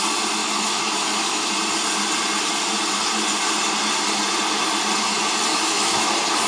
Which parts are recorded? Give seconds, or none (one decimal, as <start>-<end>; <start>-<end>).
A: 0.0-0.4; 1.5-5.5; 6.1-6.5